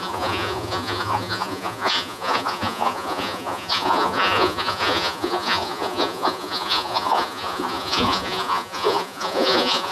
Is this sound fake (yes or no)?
yes